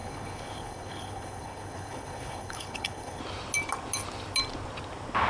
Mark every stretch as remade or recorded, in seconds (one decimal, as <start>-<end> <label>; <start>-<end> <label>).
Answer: 0.0-3.2 remade; 3.2-5.3 recorded